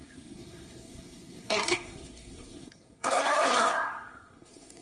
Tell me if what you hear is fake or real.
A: fake